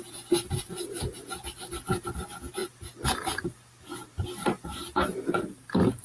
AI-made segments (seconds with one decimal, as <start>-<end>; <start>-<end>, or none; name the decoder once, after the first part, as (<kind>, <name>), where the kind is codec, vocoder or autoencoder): none